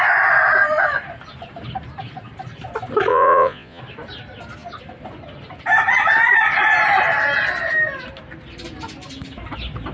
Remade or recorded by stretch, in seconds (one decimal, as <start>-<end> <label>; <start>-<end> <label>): 0.0-3.1 recorded; 3.1-3.8 remade; 3.8-9.9 recorded